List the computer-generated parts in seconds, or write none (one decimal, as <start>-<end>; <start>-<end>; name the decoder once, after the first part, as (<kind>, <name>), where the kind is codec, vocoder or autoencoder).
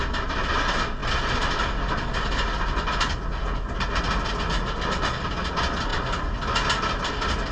none